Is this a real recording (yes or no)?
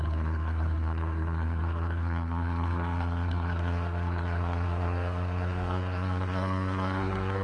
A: no